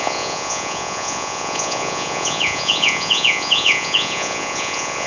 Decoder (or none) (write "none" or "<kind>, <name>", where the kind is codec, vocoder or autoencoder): vocoder, Vocos